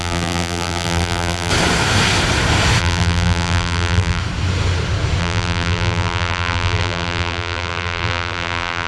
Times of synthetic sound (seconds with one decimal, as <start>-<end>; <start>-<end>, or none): 0.0-1.5; 2.8-4.2; 5.2-8.9